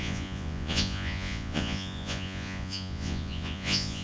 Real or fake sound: fake